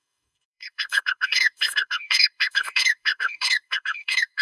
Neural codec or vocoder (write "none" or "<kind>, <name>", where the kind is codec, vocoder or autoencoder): codec, DAC